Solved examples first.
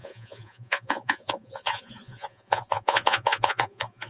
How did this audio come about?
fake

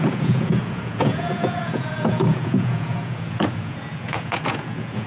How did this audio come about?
fake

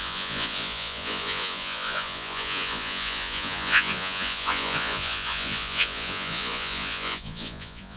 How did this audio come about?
fake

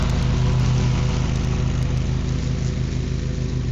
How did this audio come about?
real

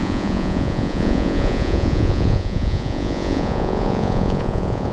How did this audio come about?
fake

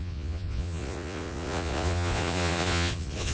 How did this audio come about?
fake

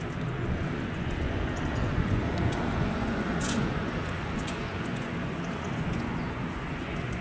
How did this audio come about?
fake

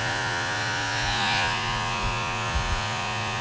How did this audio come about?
fake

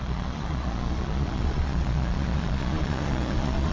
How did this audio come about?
fake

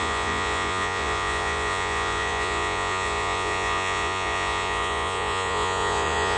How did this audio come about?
fake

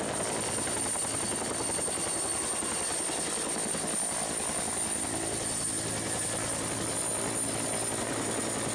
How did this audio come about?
real